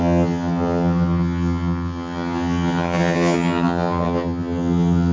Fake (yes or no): yes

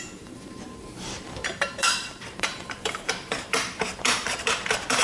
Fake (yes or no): yes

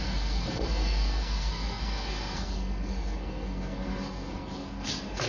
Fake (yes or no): yes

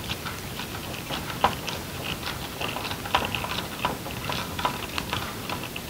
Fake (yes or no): no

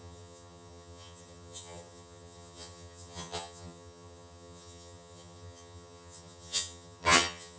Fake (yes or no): yes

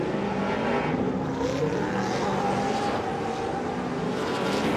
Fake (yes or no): no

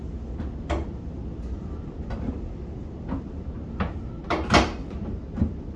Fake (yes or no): no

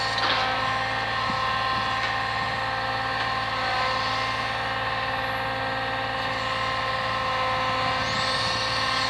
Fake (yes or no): no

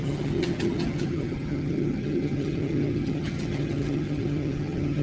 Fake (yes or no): yes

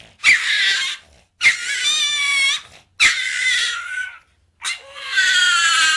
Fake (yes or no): no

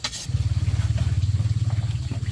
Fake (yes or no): no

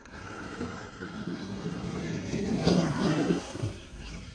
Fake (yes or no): yes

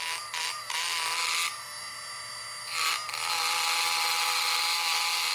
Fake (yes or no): no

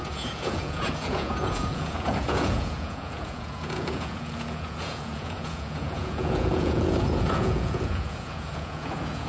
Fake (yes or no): yes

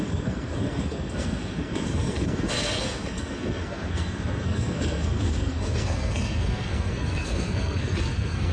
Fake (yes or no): yes